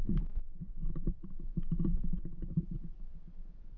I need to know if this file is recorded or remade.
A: remade